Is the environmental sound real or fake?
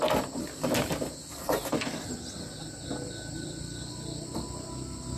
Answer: real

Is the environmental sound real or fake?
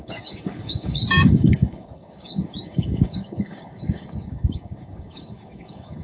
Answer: fake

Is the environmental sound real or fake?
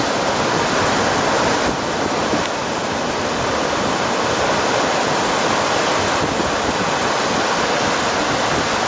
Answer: real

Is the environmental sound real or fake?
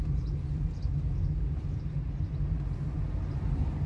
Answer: real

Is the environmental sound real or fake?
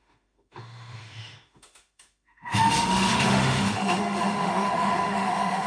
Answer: fake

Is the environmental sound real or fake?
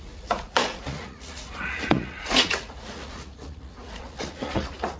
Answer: fake